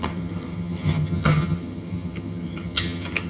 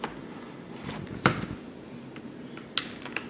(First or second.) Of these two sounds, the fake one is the first